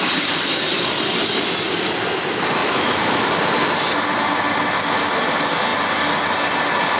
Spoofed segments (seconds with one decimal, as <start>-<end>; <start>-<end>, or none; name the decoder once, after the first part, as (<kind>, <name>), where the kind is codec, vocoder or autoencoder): 2.6-3.4 (autoencoder, DAC-VAE)